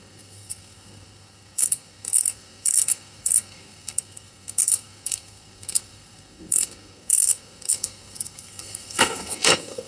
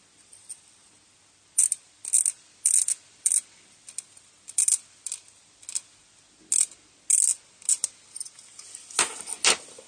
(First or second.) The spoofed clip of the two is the first